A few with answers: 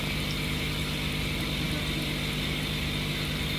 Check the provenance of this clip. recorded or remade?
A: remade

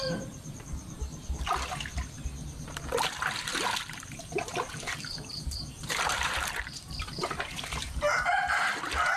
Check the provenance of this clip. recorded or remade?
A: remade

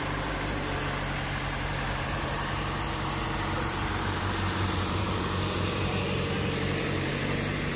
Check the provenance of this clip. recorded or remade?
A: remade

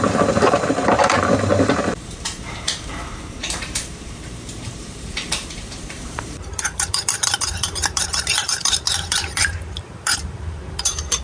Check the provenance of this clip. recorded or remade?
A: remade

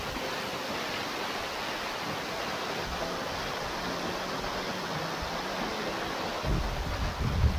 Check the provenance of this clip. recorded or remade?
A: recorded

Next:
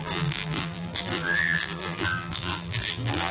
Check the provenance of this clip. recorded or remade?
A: remade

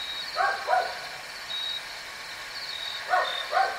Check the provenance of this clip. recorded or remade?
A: recorded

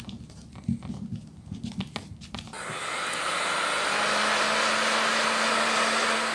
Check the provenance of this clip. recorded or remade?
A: recorded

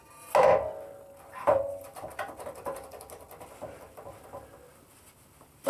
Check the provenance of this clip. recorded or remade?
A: recorded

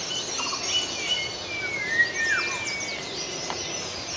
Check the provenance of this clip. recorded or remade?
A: recorded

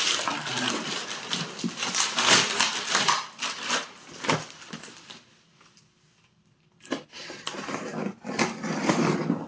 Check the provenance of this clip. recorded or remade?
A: remade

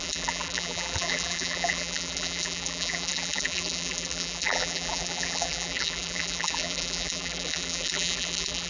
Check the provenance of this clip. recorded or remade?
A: remade